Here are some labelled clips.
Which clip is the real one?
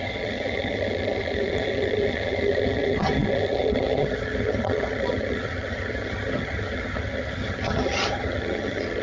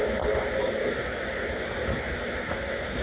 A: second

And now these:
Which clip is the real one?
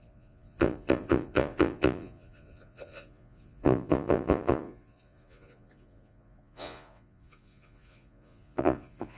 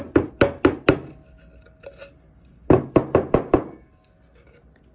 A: second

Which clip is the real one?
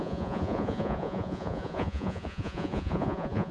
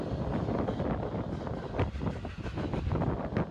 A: second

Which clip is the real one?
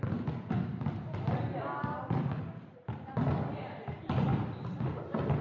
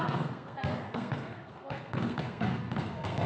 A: first